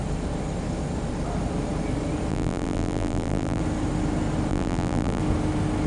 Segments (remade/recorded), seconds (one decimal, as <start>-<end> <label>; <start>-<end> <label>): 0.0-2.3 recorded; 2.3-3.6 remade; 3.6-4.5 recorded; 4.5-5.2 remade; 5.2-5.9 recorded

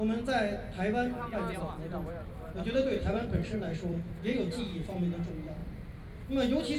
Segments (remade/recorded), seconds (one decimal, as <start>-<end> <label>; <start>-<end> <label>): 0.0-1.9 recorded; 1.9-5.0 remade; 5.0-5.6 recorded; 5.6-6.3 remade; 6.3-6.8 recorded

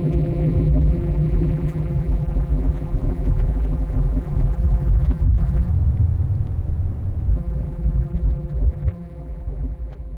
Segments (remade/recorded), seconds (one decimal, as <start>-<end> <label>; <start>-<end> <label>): 0.0-5.7 remade; 5.7-7.3 recorded; 7.3-10.2 remade

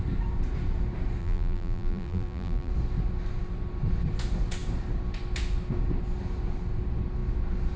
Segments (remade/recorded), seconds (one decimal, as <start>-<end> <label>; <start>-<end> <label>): 0.0-1.2 recorded; 1.2-2.7 remade; 2.7-7.8 recorded

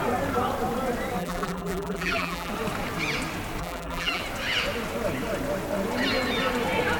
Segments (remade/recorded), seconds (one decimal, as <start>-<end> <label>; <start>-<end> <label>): 0.0-1.2 recorded; 1.2-2.5 remade; 2.5-3.6 recorded; 3.6-4.2 remade; 4.2-7.0 recorded

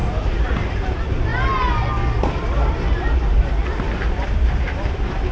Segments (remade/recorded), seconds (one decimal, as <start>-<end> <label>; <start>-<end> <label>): 0.0-0.5 recorded; 0.5-1.3 remade; 1.3-2.2 recorded; 2.2-5.3 remade

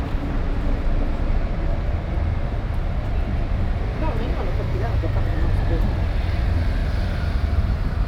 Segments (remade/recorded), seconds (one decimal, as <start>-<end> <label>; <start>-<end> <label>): 0.0-6.8 recorded; 6.8-8.1 remade